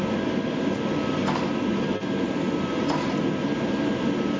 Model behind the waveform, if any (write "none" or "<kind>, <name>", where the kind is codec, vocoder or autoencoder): none